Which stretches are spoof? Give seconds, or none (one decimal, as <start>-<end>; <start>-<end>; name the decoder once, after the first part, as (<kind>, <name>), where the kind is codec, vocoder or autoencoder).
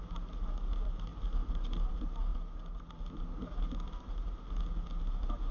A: none